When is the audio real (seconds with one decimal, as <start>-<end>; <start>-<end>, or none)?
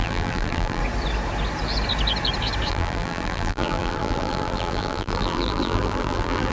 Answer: 0.8-2.7